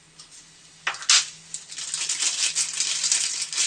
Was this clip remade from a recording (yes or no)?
no